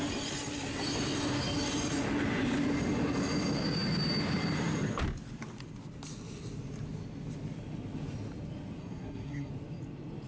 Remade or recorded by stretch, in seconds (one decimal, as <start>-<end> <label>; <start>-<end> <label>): 0.0-8.8 recorded; 8.8-9.5 remade; 9.5-10.3 recorded